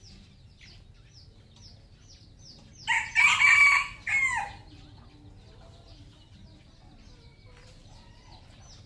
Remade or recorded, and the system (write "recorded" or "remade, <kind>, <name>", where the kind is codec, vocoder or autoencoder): recorded